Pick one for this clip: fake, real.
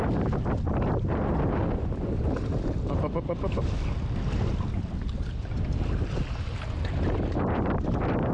real